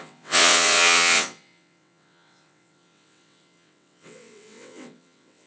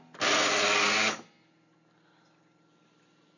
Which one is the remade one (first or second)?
first